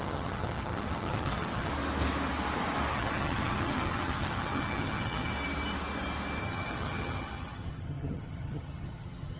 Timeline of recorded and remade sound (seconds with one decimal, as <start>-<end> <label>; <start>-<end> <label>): 0.0-1.7 remade; 1.7-2.9 recorded; 2.9-5.3 remade; 5.3-6.4 recorded; 6.4-9.4 remade